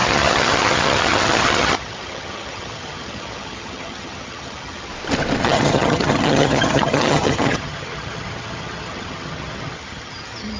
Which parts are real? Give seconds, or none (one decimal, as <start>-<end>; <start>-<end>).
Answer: 4.9-5.4